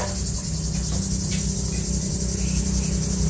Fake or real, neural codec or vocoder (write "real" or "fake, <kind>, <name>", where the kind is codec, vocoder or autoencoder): real